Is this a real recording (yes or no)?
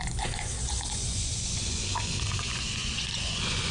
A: no